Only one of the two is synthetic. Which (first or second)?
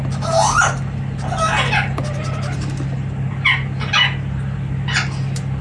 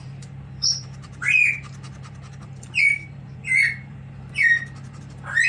second